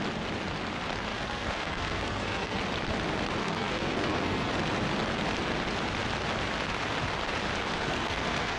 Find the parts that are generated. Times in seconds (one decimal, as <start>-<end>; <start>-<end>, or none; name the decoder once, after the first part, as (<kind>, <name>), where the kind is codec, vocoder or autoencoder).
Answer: 1.1-2.6 (codec, SNAC); 3.4-4.5; 7.7-8.6